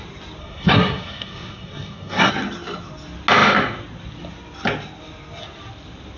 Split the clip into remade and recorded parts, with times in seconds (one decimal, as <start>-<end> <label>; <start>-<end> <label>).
0.0-0.4 recorded; 0.4-2.3 remade; 2.3-6.2 recorded